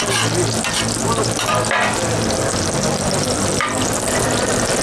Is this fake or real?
real